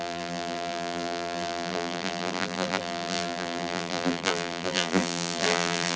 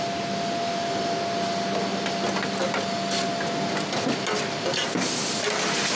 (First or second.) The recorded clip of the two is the second